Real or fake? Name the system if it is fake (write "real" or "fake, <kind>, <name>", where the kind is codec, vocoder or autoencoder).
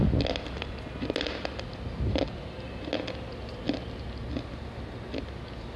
real